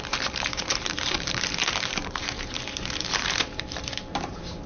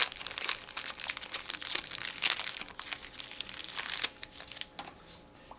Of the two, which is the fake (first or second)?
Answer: first